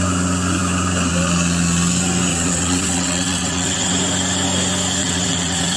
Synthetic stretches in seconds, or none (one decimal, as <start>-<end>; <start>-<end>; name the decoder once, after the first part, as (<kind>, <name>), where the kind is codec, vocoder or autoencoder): 2.3-3.9 (vocoder, WaveNeXt); 5.0-5.8

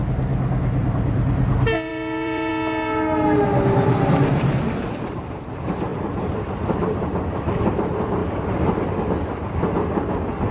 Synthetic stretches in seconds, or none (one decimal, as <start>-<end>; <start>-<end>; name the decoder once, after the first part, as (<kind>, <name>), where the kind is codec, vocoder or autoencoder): 1.9-2.5 (vocoder, BigVGAN v2); 5.9-7.6

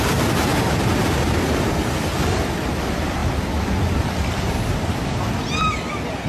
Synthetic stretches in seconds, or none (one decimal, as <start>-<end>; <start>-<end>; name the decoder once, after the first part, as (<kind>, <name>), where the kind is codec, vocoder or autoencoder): 0.0-0.5 (vocoder, BigVGAN v2); 1.4-3.2; 4.0-6.3

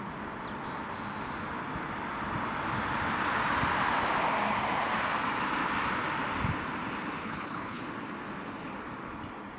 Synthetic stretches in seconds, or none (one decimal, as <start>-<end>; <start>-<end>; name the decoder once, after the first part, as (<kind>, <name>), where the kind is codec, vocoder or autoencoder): 7.2-7.8 (codec, HILCodec)

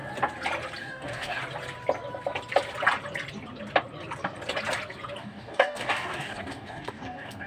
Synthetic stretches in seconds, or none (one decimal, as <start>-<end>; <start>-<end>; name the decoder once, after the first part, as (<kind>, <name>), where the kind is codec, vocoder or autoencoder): 0.8-1.4 (codec, DAC); 5.2-7.5